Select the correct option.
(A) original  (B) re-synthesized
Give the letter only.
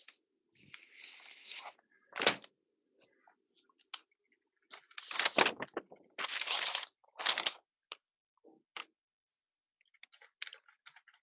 A